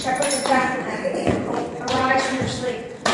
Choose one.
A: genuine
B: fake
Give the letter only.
B